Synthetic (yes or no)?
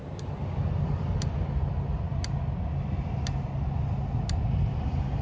no